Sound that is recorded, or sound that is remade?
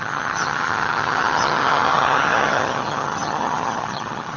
remade